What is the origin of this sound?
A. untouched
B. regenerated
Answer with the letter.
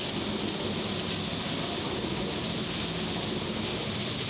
A